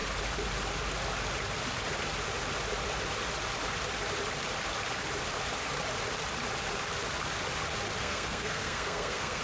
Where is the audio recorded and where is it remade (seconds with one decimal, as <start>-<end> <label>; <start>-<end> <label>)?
0.0-8.0 recorded; 8.0-9.4 remade